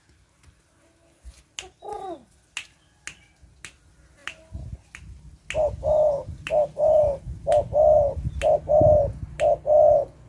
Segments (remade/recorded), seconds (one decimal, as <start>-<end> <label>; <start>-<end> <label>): 0.0-10.3 recorded